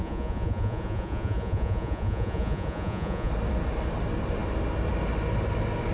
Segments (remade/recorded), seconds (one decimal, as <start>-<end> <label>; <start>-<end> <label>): 0.0-3.3 remade; 3.3-5.9 recorded